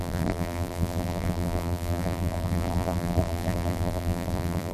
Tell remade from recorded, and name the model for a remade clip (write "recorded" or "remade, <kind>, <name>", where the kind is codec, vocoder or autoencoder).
remade, vocoder, BigVGAN v2